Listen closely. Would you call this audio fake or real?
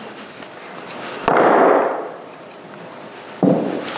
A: real